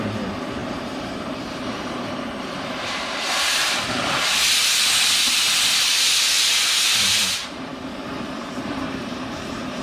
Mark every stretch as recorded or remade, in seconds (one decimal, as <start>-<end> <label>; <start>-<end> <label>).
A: 0.0-4.4 remade; 4.4-7.0 recorded; 7.0-7.7 remade; 7.7-8.6 recorded; 8.6-9.8 remade